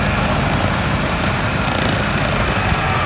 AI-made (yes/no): no